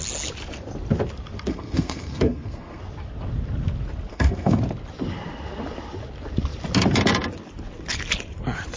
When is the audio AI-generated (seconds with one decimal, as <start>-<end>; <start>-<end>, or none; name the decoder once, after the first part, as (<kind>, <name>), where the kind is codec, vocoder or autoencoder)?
1.5-2.8 (codec, SNAC); 4.1-4.6